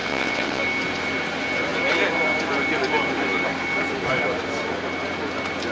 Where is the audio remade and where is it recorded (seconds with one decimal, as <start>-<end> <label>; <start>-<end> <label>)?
0.0-0.6 remade; 0.6-5.7 recorded